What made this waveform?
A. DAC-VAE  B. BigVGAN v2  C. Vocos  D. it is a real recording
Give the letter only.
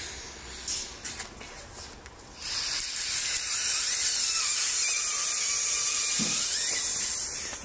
D